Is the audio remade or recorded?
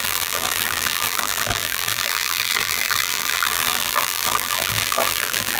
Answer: remade